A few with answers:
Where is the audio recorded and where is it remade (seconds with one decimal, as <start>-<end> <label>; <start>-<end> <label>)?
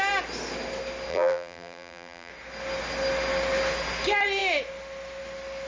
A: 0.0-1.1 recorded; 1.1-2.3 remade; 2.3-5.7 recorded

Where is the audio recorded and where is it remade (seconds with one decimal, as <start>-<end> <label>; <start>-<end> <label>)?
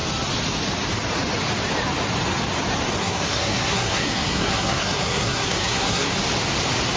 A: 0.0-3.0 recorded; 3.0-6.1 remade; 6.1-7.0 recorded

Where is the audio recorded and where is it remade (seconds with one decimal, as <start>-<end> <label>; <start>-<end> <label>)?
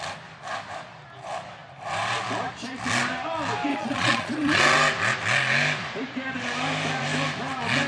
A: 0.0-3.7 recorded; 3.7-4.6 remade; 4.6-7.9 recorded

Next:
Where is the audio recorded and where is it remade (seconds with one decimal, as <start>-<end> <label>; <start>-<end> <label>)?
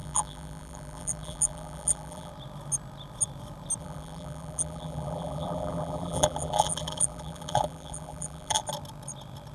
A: 0.0-2.3 remade; 2.3-3.8 recorded; 3.8-8.6 remade; 8.6-9.5 recorded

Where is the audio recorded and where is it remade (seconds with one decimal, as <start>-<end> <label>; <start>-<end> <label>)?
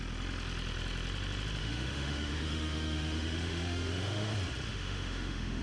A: 0.0-1.6 recorded; 1.6-4.3 remade; 4.3-4.7 recorded; 4.7-5.6 remade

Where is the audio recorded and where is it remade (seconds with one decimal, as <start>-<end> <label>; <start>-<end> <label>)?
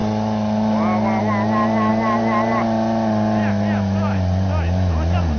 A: 0.0-5.4 recorded